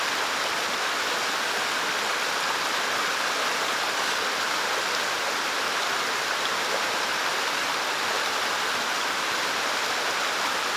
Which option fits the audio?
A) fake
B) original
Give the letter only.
B